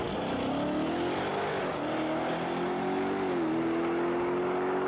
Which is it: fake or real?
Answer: real